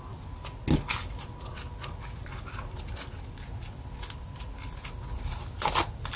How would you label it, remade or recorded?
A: recorded